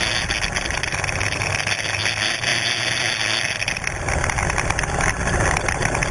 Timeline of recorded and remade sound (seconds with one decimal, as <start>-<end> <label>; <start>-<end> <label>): 0.0-6.1 recorded